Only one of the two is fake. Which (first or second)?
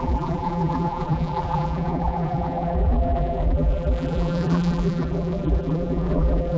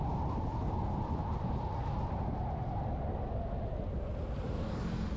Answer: first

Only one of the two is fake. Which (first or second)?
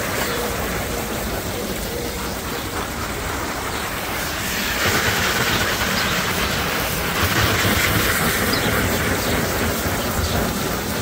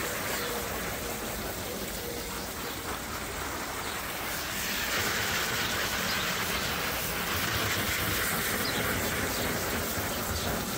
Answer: first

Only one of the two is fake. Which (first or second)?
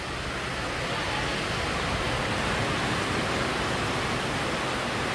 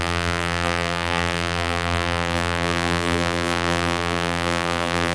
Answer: second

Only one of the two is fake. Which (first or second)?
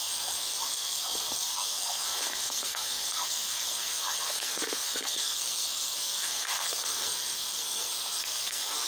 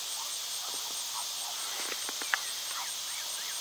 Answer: first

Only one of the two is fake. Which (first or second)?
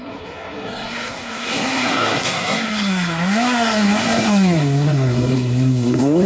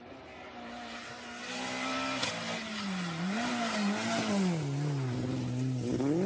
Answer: first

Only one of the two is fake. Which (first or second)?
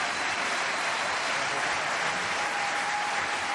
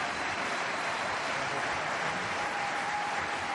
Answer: second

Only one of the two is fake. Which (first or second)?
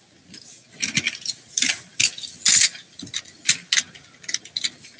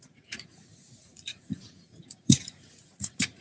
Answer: second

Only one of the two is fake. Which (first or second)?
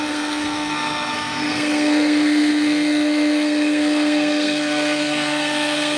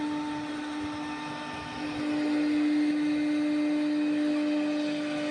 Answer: first